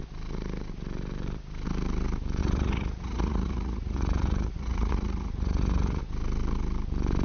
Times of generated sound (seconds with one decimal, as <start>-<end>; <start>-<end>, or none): 2.4-6.0